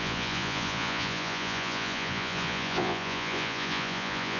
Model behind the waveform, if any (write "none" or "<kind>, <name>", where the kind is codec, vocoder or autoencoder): vocoder, Vocos